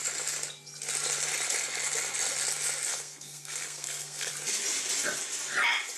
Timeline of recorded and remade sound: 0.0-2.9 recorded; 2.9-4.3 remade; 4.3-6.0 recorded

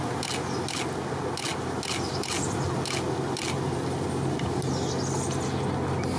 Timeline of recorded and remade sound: 0.0-6.2 recorded

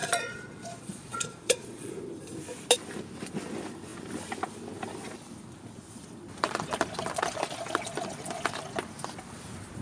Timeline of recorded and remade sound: 0.0-1.9 remade; 1.9-9.8 recorded

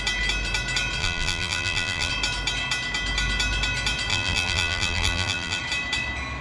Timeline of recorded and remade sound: 0.0-1.0 recorded; 1.0-2.1 remade; 2.1-4.1 recorded; 4.1-5.6 remade; 5.6-6.4 recorded

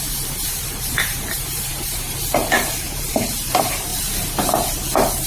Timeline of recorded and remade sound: 0.0-3.9 remade; 3.9-5.3 recorded

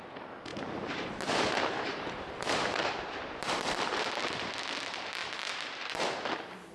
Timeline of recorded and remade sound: 0.0-0.5 recorded; 0.5-4.5 remade; 4.5-5.2 recorded; 5.2-6.1 remade; 6.1-6.7 recorded

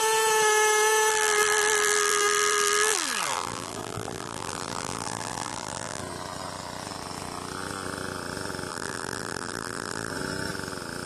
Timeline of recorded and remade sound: 0.0-1.1 recorded; 1.1-6.0 remade; 6.0-8.7 recorded; 8.7-10.1 remade; 10.1-11.1 recorded

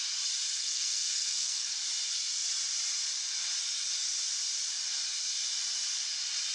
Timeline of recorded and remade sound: 0.0-0.6 recorded; 0.6-1.7 remade; 1.7-6.5 recorded